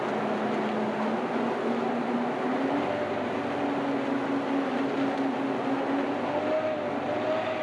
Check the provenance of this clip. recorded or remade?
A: recorded